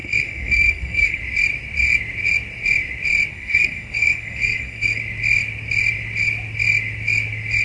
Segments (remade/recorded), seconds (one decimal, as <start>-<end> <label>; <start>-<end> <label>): 0.0-1.2 remade; 1.2-3.3 recorded; 3.3-5.0 remade; 5.0-7.6 recorded